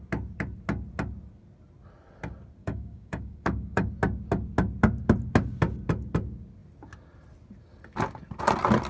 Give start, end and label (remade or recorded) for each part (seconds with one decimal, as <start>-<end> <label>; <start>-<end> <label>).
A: 0.0-2.6 recorded; 2.6-3.9 remade; 3.9-8.9 recorded